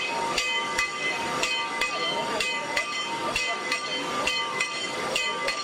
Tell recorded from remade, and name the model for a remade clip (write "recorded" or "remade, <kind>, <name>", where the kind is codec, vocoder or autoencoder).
remade, codec, DAC